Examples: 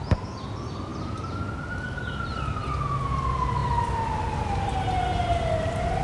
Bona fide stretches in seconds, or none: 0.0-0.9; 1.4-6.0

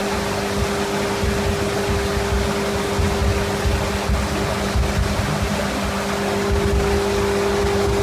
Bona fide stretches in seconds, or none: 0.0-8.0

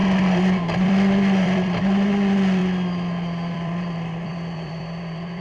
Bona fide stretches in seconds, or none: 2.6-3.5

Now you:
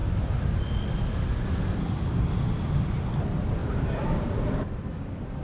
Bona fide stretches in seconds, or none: 0.0-3.6; 4.3-5.4